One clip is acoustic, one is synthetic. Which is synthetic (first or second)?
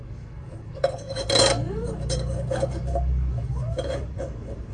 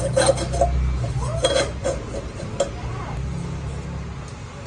first